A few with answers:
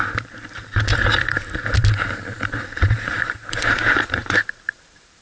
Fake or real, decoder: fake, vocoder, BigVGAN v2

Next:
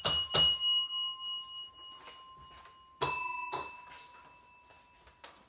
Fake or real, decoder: real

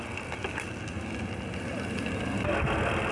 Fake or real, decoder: real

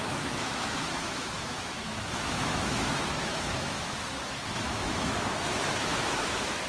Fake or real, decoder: fake, autoencoder, DAC-VAE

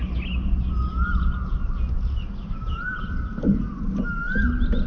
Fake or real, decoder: real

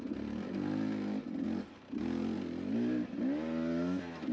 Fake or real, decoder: real